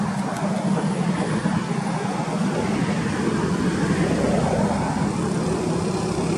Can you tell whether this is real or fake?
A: real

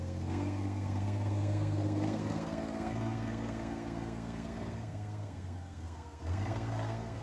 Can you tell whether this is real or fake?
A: fake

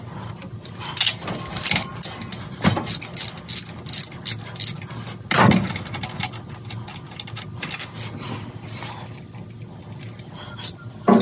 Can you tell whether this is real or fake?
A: real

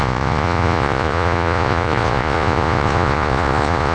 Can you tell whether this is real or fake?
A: fake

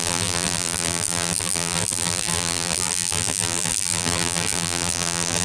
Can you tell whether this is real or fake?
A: fake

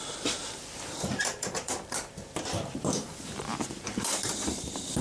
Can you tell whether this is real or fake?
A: fake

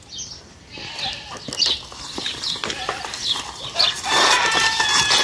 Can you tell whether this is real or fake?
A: real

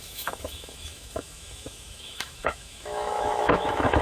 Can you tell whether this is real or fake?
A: fake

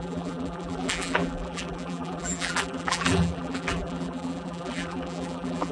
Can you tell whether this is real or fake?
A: fake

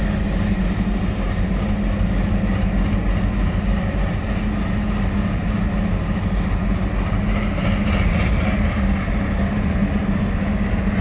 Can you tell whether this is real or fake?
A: real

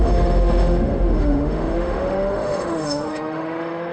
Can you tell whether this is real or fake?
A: fake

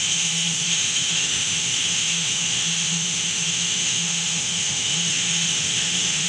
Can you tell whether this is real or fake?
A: fake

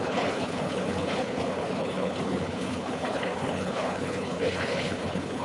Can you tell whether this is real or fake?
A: fake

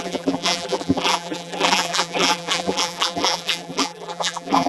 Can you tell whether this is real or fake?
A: fake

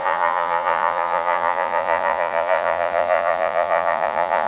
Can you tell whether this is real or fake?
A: fake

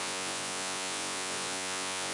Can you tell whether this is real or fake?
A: fake